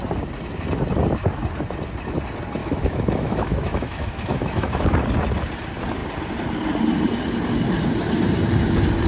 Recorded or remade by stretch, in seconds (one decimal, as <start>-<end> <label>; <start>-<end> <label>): 0.0-2.6 recorded; 2.6-4.8 remade; 4.8-9.1 recorded